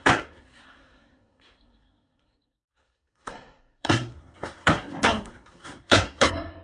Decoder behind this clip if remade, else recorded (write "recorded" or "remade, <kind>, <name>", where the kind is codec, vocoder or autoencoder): remade, codec, SNAC